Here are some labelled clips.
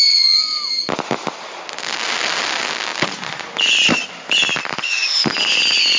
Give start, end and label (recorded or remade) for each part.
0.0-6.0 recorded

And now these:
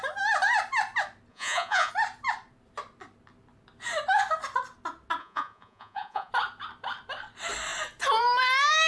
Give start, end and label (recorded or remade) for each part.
0.0-1.3 recorded; 1.3-1.9 remade; 1.9-5.2 recorded; 5.2-6.3 remade; 6.3-8.9 recorded

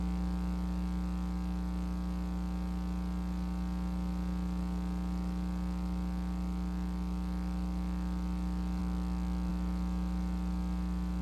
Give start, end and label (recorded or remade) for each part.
0.0-11.2 recorded